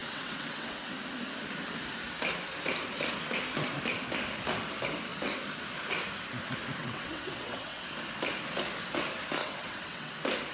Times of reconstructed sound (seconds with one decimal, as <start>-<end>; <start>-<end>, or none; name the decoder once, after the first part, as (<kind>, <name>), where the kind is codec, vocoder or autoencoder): 0.0-0.9 (vocoder, WaveNeXt); 6.8-7.8; 9.4-10.1